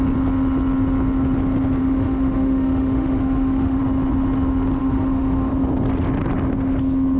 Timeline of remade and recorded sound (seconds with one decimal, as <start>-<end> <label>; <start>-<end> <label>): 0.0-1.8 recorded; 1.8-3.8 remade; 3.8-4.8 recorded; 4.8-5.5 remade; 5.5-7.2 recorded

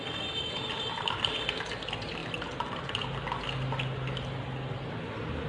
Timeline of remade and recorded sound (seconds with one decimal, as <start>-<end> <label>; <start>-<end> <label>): 0.0-5.5 recorded

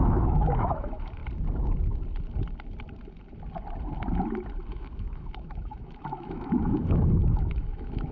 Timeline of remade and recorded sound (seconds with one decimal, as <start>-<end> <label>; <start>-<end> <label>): 0.0-1.2 remade; 1.2-4.7 recorded; 4.7-8.1 remade

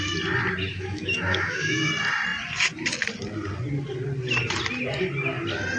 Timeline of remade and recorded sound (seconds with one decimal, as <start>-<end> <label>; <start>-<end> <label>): 0.0-0.7 recorded; 0.7-1.9 remade; 1.9-5.8 recorded

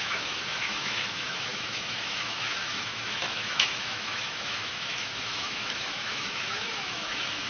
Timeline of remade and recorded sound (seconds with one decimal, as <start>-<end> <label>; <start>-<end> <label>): 0.0-7.5 remade